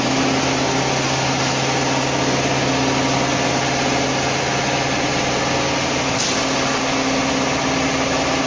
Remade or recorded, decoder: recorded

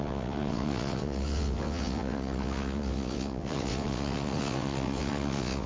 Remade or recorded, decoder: remade, vocoder, WaveNeXt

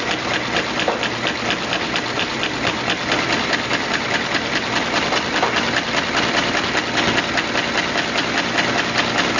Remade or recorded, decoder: recorded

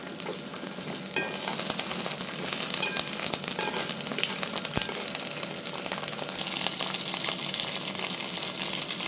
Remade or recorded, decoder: recorded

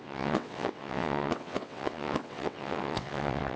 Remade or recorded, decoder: remade, vocoder, WaveNeXt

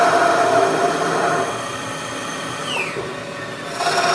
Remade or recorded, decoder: recorded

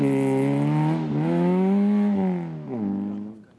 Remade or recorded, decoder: recorded